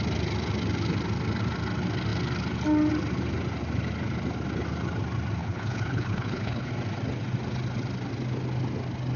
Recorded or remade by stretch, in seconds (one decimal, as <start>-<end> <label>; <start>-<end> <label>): 0.0-5.4 recorded; 5.4-6.7 remade; 6.7-9.2 recorded